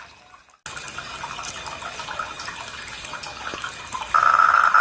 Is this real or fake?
real